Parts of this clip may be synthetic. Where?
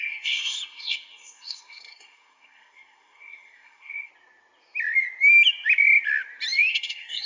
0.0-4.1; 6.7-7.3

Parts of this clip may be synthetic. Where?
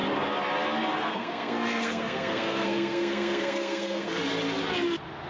1.0-4.2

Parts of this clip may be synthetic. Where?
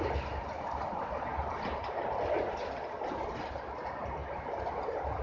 none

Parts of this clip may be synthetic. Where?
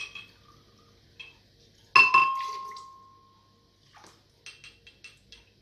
none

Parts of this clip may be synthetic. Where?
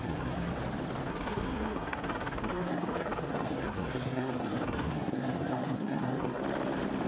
0.0-0.5; 1.1-6.4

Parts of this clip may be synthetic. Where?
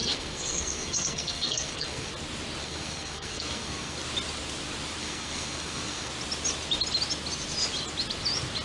0.0-2.1; 2.6-4.0; 5.0-6.1